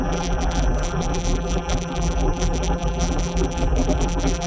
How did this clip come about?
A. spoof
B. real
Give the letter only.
A